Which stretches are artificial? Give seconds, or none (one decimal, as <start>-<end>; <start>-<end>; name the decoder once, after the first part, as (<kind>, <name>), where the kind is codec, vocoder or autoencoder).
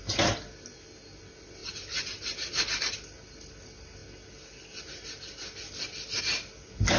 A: none